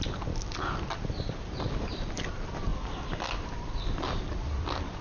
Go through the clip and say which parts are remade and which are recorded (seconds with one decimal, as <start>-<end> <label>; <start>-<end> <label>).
0.0-5.0 recorded